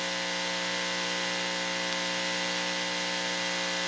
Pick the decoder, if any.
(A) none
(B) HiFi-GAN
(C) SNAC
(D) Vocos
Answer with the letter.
A